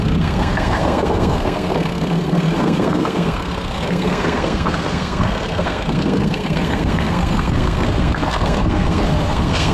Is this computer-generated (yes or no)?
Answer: yes